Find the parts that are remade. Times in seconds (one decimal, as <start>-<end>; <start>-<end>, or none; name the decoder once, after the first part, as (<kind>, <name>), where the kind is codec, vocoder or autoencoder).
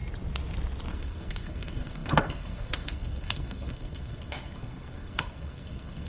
0.9-6.1 (codec, SNAC)